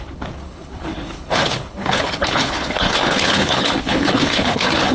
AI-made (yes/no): yes